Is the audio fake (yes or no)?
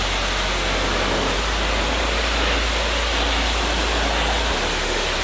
no